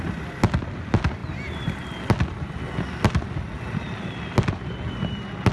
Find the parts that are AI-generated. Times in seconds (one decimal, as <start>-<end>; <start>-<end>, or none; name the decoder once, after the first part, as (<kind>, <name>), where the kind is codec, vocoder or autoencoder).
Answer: none